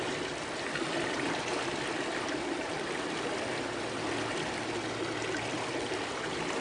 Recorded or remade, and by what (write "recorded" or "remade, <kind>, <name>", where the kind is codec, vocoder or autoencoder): recorded